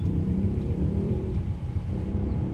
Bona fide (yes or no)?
no